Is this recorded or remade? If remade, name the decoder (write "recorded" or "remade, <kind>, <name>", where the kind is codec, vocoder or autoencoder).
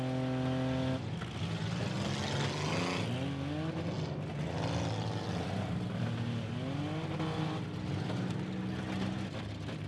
recorded